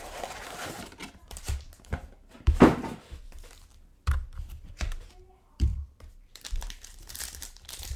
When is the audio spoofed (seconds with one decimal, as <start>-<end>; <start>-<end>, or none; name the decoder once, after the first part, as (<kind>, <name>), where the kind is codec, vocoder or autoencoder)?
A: 0.0-8.0 (vocoder, BigVGAN v2)